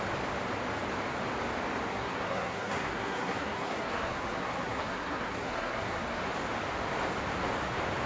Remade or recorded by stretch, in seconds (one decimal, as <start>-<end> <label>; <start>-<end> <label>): 0.0-1.9 recorded; 1.9-6.2 remade; 6.2-8.1 recorded

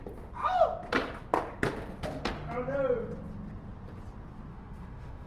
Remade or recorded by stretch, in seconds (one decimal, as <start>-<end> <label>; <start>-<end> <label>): 0.0-4.5 recorded; 4.5-5.3 remade

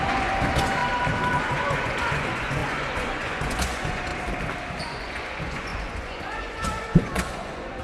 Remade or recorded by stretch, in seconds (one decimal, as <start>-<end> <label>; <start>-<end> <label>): 0.0-0.8 remade; 0.8-1.4 recorded; 1.4-4.1 remade; 4.1-4.8 recorded; 4.8-7.8 remade

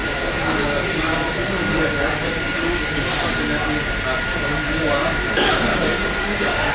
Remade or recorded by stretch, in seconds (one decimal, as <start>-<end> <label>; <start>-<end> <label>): 0.0-5.7 recorded; 5.7-6.7 remade

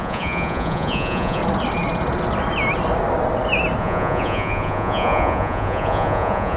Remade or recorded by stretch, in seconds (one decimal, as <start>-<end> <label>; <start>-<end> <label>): 0.0-1.4 remade; 1.4-3.8 recorded; 3.8-6.6 remade

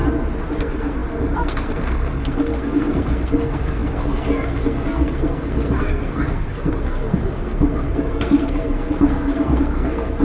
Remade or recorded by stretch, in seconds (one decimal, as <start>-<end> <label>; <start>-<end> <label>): 0.0-0.6 recorded; 0.6-10.2 remade

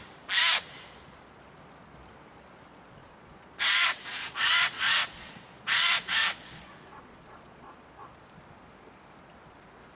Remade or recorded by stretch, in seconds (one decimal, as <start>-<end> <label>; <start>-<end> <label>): 0.0-3.0 recorded; 3.0-8.1 remade; 8.1-9.9 recorded